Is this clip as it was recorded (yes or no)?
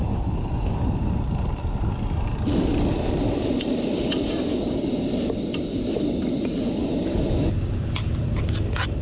yes